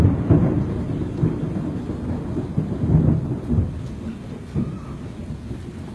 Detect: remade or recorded recorded